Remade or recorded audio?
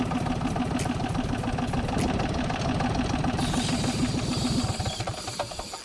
recorded